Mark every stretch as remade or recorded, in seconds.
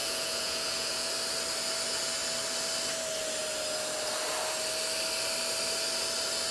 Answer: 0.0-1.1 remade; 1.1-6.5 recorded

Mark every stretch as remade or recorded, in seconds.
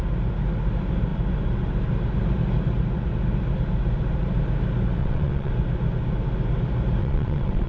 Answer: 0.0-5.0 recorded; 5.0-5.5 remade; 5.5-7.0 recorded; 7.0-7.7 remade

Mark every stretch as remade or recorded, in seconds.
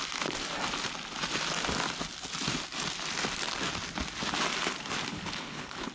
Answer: 0.0-5.1 recorded; 5.1-5.9 remade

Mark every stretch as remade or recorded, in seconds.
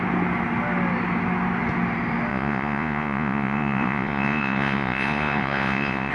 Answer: 0.0-2.3 recorded; 2.3-6.1 remade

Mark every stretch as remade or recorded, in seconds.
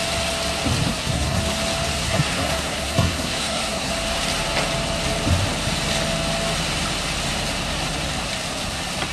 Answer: 0.0-0.9 recorded; 0.9-1.4 remade; 1.4-2.0 recorded; 2.0-3.9 remade; 3.9-9.1 recorded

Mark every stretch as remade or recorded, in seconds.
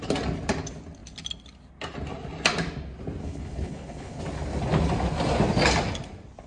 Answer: 0.0-3.2 recorded; 3.2-4.2 remade; 4.2-6.5 recorded